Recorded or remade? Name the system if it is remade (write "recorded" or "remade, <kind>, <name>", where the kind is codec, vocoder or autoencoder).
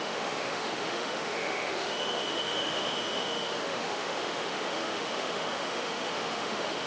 remade, autoencoder, DAC-VAE